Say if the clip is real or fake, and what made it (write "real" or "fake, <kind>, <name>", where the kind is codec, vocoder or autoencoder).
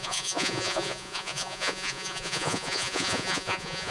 fake, vocoder, Vocos